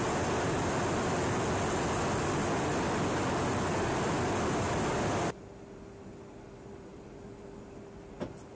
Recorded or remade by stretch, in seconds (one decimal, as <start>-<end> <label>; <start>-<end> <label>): 0.0-6.9 recorded; 6.9-7.6 remade; 7.6-8.6 recorded